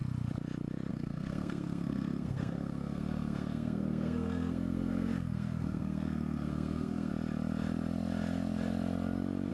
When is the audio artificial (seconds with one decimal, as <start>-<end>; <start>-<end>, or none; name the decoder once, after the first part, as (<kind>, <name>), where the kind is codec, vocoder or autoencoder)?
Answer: 0.9-7.1 (codec, SNAC)